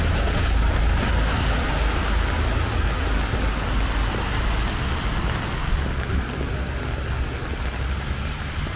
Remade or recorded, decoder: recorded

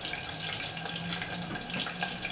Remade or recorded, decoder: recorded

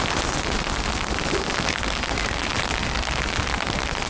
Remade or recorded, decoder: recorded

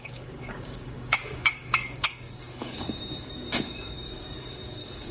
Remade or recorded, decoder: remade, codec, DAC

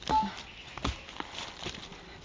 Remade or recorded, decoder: recorded